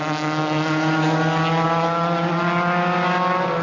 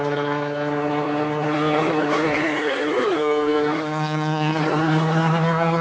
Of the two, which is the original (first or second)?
first